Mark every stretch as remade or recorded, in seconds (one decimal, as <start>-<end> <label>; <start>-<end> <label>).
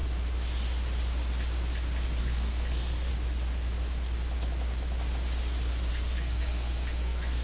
0.0-2.2 recorded; 2.2-3.1 remade; 3.1-5.9 recorded; 5.9-7.4 remade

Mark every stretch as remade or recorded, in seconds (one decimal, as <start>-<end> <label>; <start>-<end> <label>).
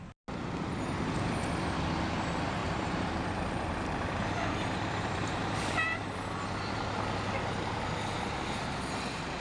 0.0-2.6 recorded; 2.6-6.0 remade; 6.0-9.4 recorded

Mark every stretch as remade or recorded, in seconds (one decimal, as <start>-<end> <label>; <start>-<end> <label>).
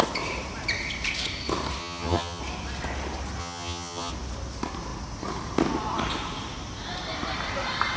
0.0-1.8 recorded; 1.8-2.4 remade; 2.4-3.4 recorded; 3.4-4.1 remade; 4.1-8.0 recorded